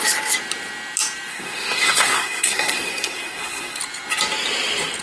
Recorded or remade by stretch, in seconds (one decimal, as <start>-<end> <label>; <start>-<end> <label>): 0.0-1.3 recorded; 1.3-3.8 remade; 3.8-5.0 recorded